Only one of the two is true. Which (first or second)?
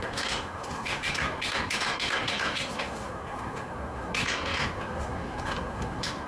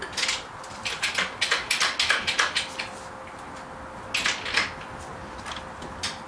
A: second